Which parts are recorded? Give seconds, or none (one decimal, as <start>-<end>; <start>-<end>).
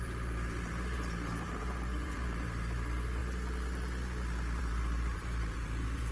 3.2-4.6